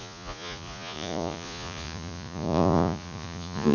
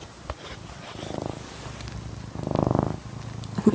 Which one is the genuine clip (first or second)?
second